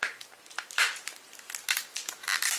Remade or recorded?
remade